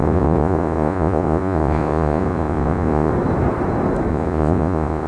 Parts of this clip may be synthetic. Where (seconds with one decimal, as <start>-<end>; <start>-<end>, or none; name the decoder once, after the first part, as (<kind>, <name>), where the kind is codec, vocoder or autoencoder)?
0.0-3.1 (vocoder, Vocos); 4.1-5.1